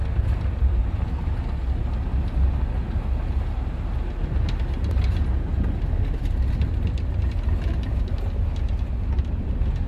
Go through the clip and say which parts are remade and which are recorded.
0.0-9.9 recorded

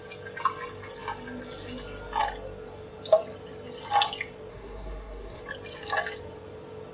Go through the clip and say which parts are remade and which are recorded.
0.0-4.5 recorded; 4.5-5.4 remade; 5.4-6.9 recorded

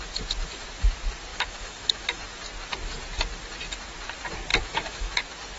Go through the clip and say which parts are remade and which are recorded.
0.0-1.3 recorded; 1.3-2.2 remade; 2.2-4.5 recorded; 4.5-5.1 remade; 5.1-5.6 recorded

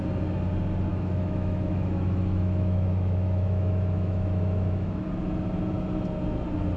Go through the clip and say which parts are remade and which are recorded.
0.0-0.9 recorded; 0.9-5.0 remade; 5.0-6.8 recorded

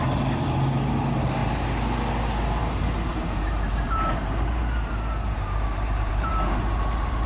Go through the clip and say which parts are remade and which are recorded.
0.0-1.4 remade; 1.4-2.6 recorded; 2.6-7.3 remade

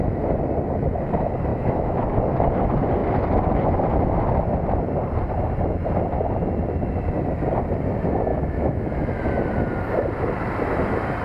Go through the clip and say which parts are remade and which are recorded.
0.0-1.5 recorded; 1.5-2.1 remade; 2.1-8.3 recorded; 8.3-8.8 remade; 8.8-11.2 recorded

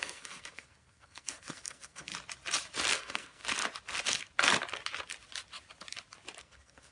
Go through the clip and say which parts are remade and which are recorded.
0.0-2.1 remade; 2.1-2.9 recorded; 2.9-3.4 remade; 3.4-6.4 recorded; 6.4-6.9 remade

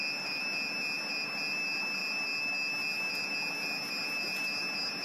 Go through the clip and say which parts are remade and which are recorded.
0.0-5.0 recorded